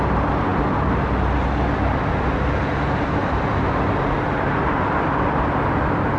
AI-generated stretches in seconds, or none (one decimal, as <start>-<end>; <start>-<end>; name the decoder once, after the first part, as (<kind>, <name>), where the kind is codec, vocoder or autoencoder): none